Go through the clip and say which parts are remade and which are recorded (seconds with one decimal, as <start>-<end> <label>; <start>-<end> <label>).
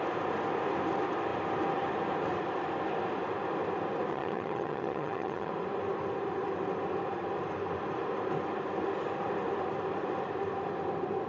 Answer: 0.0-4.1 recorded; 4.1-5.5 remade; 5.5-11.3 recorded